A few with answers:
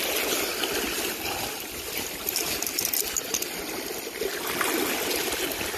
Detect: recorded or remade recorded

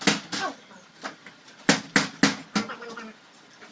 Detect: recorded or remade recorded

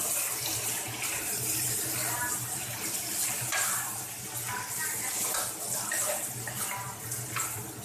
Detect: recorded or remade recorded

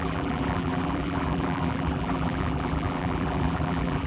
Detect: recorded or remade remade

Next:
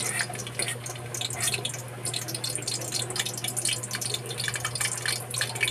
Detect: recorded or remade recorded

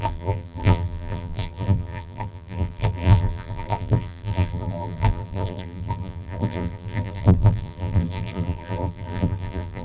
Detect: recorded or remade remade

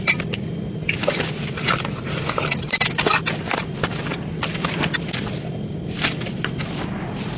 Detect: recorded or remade remade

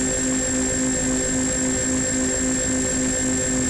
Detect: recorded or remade recorded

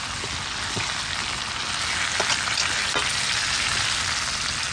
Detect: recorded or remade recorded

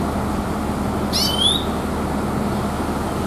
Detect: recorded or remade recorded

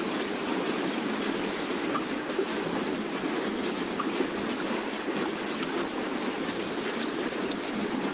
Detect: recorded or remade recorded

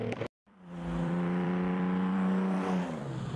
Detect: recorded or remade remade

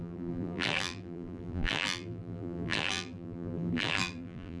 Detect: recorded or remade remade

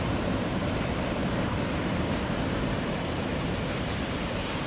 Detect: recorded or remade remade